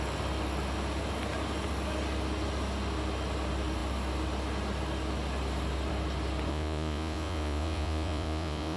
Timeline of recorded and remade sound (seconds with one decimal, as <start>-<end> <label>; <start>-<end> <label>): 0.0-6.5 recorded; 6.5-8.8 remade